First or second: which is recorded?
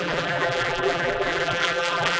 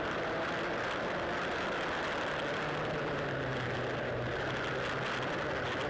second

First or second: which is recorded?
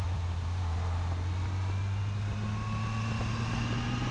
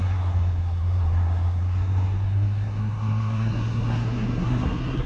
first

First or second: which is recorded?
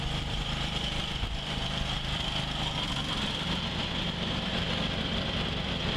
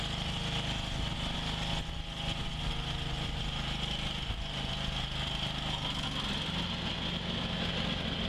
second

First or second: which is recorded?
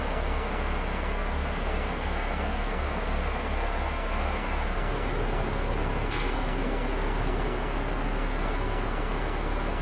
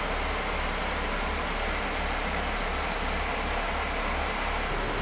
second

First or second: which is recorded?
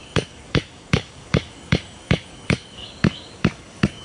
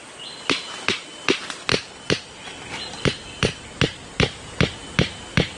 second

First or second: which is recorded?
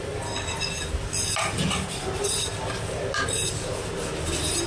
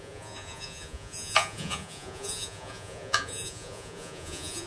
first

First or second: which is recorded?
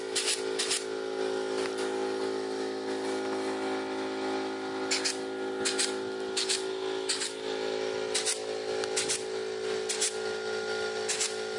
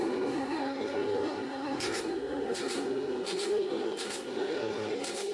first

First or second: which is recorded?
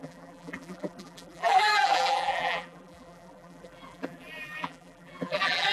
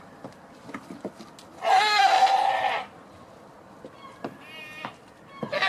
second